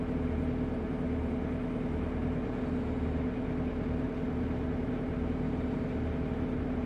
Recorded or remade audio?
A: recorded